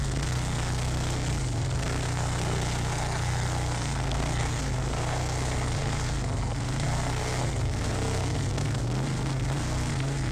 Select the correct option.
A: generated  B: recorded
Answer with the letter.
A